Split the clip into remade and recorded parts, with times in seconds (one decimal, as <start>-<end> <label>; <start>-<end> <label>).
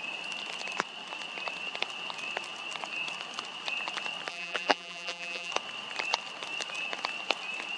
0.0-4.3 recorded; 4.3-5.5 remade; 5.5-7.8 recorded